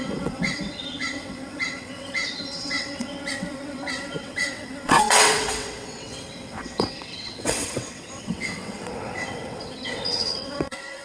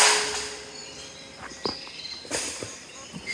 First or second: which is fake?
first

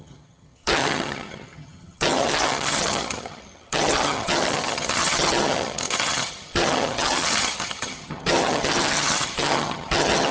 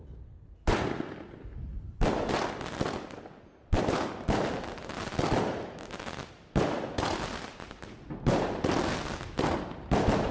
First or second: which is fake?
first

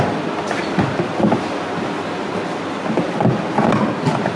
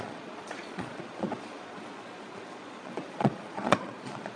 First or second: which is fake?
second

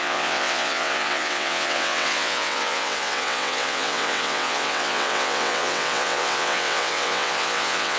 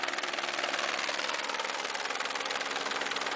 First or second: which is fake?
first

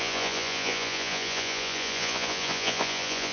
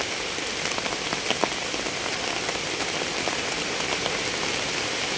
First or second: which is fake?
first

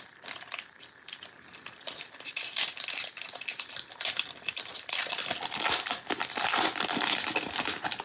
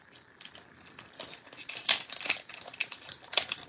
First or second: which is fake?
first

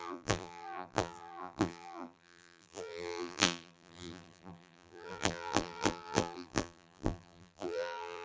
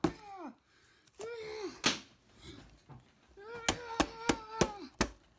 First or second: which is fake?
first